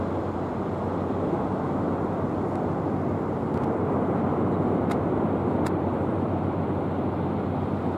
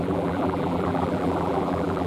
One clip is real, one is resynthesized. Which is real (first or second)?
first